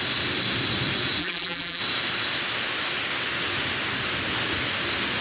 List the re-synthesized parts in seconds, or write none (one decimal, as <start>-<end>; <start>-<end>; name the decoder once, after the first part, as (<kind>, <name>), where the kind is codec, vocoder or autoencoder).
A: 1.2-1.8 (vocoder, BigVGAN v2)